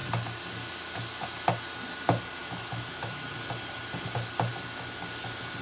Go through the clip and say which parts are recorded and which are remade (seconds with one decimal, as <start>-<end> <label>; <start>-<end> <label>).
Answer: 0.0-2.4 recorded; 2.4-3.3 remade; 3.3-5.6 recorded